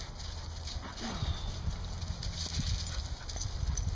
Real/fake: real